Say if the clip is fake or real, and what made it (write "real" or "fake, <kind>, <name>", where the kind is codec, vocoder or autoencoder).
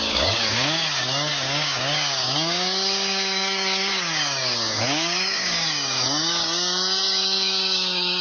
fake, codec, DAC